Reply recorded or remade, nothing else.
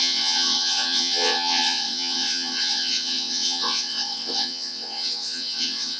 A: remade